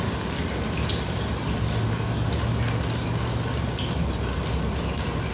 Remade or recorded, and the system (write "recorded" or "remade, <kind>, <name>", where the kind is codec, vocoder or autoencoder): recorded